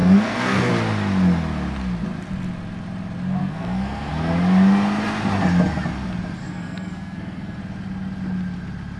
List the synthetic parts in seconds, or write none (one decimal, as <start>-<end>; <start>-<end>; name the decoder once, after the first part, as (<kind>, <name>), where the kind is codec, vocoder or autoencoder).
0.0-0.7 (codec, SNAC); 3.4-4.1; 6.4-7.6